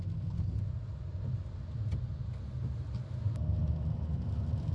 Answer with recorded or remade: recorded